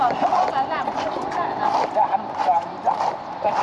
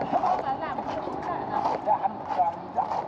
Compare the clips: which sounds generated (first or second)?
first